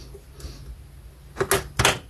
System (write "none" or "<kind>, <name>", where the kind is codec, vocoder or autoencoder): none